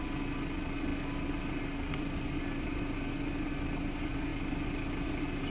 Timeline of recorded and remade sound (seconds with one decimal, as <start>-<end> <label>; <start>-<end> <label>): 0.0-5.5 recorded